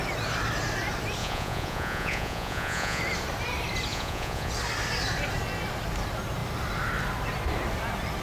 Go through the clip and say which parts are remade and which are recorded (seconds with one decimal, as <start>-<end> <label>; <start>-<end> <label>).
0.0-1.2 recorded; 1.2-3.0 remade; 3.0-3.9 recorded; 3.9-4.5 remade; 4.5-8.2 recorded